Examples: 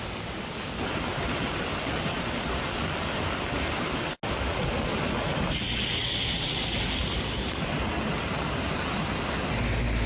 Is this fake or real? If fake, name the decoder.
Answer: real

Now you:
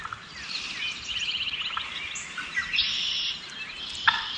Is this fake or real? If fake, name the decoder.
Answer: fake, vocoder, BigVGAN v2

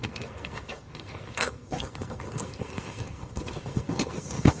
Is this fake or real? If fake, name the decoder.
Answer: fake, codec, SNAC